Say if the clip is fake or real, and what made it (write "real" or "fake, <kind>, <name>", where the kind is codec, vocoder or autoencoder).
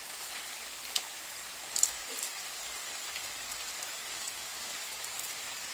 fake, codec, DAC